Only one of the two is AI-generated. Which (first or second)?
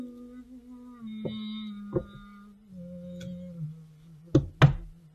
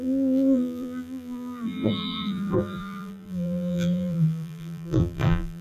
second